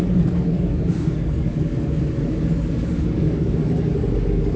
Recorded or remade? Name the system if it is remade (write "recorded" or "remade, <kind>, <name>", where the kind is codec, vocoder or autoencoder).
remade, codec, DAC